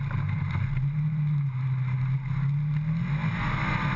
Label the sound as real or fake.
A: real